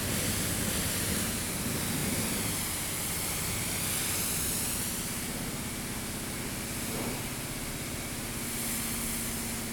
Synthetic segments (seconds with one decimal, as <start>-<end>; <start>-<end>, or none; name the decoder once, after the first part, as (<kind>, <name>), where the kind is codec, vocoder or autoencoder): 2.0-3.8 (vocoder, BigVGAN v2)

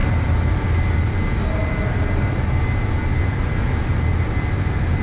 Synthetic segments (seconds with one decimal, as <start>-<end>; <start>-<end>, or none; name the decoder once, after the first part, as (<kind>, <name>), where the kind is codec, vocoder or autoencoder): none

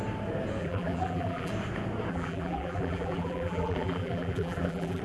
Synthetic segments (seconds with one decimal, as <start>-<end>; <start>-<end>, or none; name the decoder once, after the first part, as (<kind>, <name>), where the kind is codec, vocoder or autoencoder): 0.6-1.5 (vocoder, BigVGAN v2); 2.1-5.0

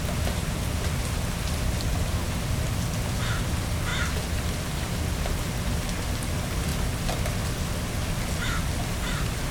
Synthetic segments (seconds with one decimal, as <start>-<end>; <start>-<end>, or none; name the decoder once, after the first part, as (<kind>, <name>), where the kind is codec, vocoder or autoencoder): none